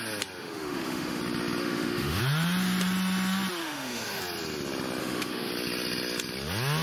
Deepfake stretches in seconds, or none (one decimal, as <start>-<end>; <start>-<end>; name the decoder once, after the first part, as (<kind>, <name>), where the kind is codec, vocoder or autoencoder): 0.4-1.2 (autoencoder, DAC-VAE); 1.6-2.2; 3.6-4.2; 5.0-5.5